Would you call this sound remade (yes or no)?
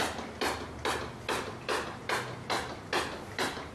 no